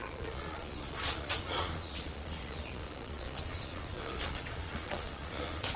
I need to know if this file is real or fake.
fake